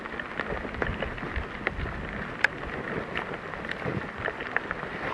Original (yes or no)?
yes